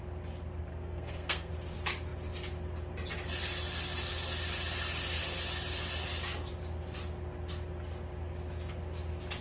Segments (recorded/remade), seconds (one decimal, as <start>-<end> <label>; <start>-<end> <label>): 0.0-0.7 recorded; 0.7-1.5 remade; 1.5-9.4 recorded